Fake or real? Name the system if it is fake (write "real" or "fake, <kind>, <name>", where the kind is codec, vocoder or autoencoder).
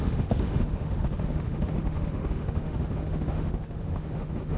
fake, autoencoder, DAC-VAE